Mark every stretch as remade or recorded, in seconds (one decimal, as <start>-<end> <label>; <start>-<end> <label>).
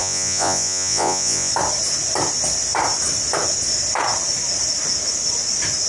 0.0-1.5 remade; 1.5-5.9 recorded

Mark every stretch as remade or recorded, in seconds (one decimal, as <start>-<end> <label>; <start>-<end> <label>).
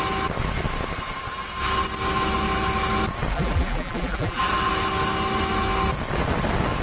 0.0-3.3 recorded; 3.3-4.4 remade; 4.4-6.8 recorded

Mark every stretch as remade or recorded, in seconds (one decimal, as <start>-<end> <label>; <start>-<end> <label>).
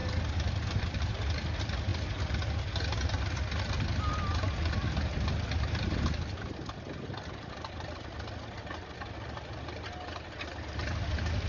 0.0-11.5 recorded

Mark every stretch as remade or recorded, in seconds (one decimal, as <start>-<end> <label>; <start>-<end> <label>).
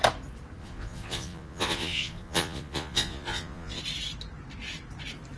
0.0-0.6 recorded; 0.6-3.8 remade; 3.8-5.4 recorded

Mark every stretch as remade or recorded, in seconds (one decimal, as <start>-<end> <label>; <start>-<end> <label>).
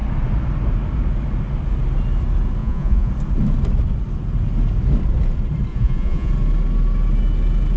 0.0-2.6 recorded; 2.6-3.1 remade; 3.1-5.7 recorded; 5.7-6.3 remade; 6.3-7.8 recorded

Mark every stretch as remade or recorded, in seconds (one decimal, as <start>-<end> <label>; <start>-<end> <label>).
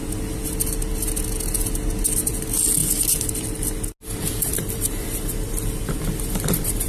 0.0-4.5 recorded; 4.5-6.9 remade